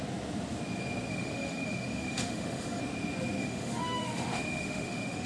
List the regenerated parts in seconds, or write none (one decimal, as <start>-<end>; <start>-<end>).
1.1-2.8; 3.4-5.3